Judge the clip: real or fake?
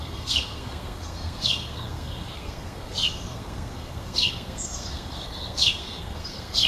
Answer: fake